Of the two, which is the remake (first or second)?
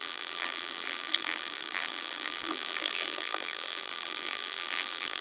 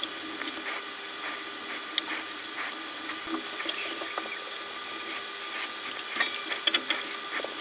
first